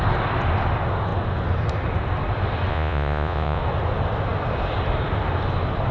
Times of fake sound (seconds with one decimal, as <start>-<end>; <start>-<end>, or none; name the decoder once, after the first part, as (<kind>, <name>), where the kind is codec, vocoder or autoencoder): 2.7-3.6 (vocoder, Vocos)